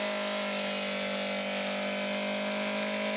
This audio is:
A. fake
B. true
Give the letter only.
B